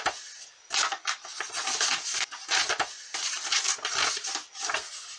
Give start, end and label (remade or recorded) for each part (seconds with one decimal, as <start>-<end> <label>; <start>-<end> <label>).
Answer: 0.0-5.2 recorded